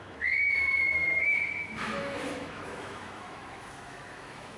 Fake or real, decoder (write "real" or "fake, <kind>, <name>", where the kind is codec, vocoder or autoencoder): fake, autoencoder, DAC-VAE